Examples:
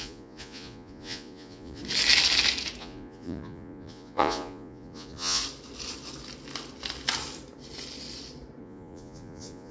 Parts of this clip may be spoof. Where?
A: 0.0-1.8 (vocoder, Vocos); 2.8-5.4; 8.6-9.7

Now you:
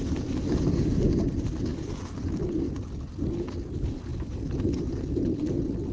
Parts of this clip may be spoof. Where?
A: none

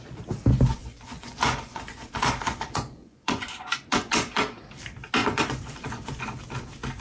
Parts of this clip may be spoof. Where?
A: 0.7-4.4 (vocoder, Vocos); 5.2-6.4

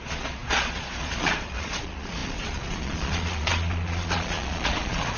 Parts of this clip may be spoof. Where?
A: 0.0-5.2 (vocoder, Vocos)

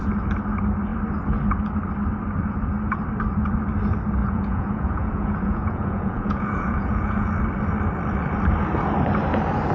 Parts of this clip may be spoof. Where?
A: 4.2-7.3 (vocoder, Vocos)

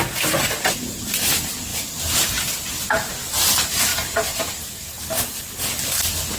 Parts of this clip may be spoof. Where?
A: 3.9-5.0 (vocoder, Vocos)